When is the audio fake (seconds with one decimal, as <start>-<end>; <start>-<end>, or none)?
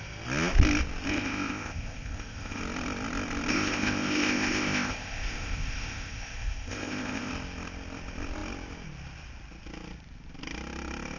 1.1-2.6; 3.5-7.3